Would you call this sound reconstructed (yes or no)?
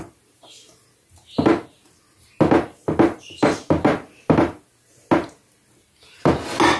no